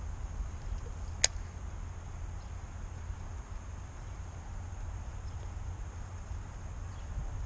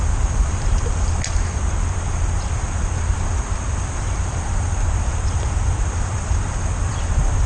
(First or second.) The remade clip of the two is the second